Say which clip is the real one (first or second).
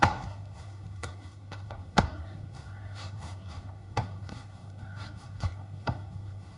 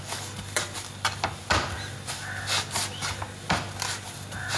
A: second